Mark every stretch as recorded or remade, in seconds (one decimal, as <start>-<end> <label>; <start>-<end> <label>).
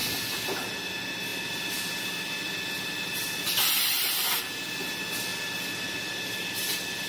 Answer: 0.0-7.1 recorded